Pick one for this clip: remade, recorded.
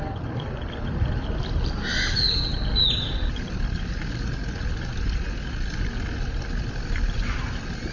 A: recorded